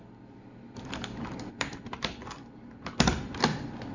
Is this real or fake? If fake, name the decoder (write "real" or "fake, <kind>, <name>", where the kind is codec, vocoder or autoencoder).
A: fake, vocoder, BigVGAN v2